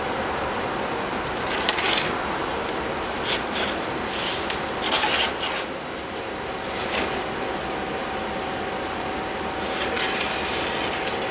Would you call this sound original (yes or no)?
yes